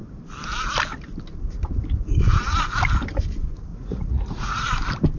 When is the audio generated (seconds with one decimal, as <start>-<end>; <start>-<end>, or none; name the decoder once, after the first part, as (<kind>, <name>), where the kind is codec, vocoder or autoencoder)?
3.7-4.6 (vocoder, Vocos)